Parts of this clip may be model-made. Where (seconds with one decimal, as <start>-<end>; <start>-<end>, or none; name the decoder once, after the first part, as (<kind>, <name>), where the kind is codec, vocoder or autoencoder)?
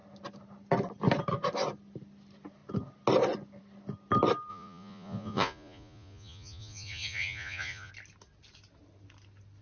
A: 4.5-7.9 (vocoder, Vocos)